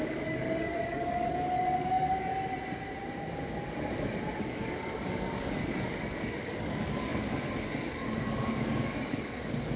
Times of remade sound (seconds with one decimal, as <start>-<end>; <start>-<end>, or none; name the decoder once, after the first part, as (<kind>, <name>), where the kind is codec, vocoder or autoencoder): 0.0-2.3 (codec, DAC); 4.5-9.8